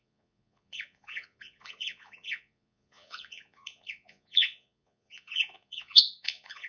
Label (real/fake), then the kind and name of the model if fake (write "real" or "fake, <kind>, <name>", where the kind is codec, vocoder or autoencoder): fake, vocoder, Vocos